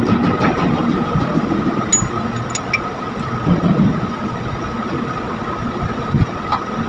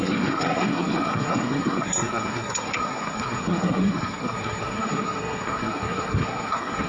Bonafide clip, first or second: first